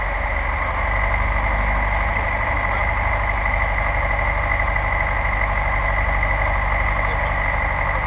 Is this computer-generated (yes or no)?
no